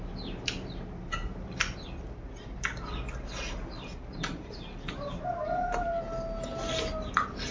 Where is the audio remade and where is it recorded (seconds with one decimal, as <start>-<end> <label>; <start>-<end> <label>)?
0.0-7.5 recorded